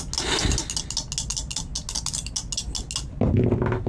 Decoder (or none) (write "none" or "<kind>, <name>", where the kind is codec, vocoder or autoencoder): none